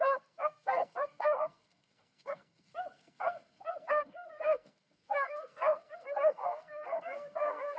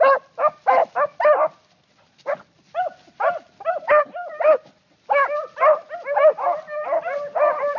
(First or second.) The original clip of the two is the second